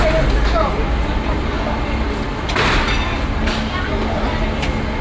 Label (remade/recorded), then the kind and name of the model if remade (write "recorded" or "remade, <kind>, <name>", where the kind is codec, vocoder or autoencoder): recorded